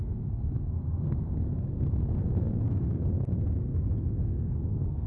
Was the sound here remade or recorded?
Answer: remade